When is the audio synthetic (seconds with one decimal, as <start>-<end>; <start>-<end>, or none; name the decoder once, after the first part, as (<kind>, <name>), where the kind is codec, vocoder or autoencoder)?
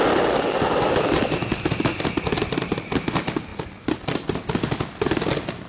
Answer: none